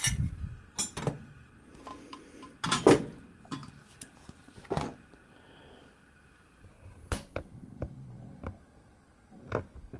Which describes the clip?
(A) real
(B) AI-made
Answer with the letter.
A